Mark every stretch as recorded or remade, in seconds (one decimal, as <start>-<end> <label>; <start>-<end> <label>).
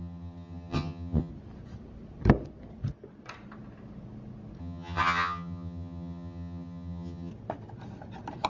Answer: 0.0-1.3 remade; 1.3-4.6 recorded; 4.6-7.3 remade; 7.3-8.5 recorded